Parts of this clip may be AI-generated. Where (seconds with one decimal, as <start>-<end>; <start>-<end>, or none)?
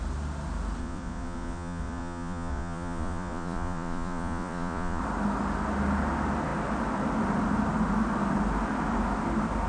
0.8-5.0